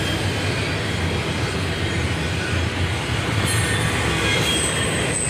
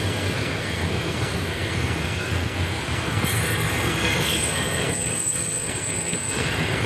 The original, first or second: first